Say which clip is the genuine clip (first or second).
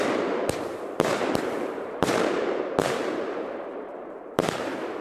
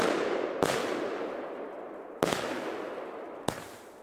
second